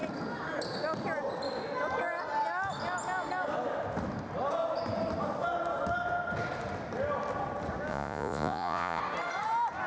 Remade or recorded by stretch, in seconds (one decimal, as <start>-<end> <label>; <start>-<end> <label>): 0.0-7.9 recorded; 7.9-9.0 remade; 9.0-9.9 recorded